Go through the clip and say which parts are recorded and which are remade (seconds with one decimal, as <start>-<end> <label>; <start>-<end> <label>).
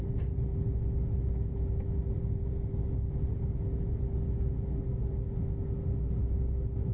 0.0-6.9 recorded